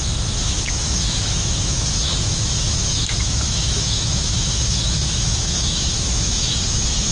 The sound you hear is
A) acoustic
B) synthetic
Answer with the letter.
B